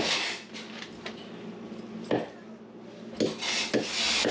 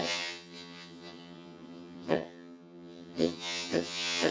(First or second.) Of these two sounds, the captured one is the first